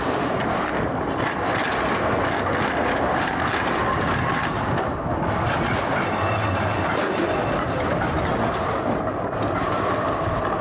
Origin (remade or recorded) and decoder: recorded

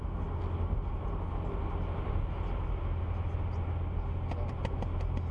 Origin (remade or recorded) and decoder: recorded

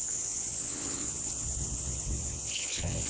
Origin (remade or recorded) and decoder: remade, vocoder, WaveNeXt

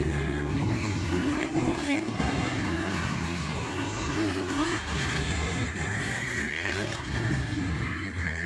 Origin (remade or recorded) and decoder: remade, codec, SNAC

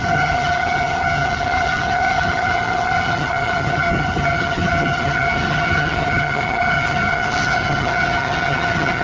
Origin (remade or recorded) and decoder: remade, vocoder, HiFi-GAN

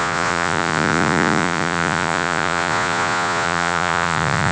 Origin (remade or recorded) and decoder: remade, vocoder, Vocos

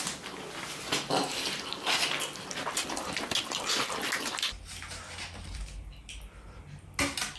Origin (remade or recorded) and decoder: recorded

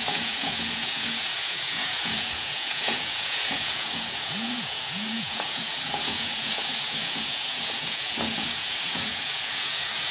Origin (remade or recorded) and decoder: remade, vocoder, Vocos